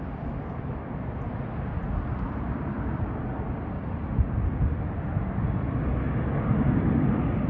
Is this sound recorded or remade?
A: recorded